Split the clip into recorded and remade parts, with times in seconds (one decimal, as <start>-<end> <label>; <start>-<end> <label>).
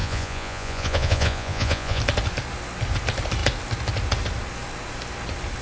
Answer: 0.0-2.0 remade; 2.0-5.6 recorded